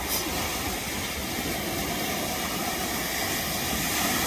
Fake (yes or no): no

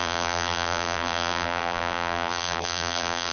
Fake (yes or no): yes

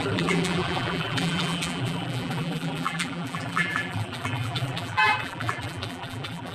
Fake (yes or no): yes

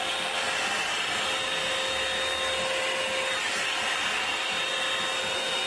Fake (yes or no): no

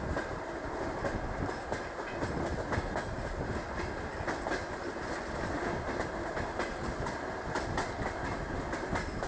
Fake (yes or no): no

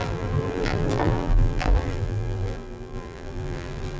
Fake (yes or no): yes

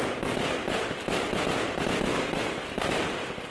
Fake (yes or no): no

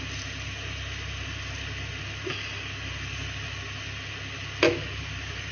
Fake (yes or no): no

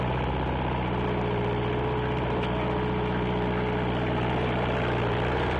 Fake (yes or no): no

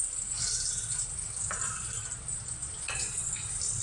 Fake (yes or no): no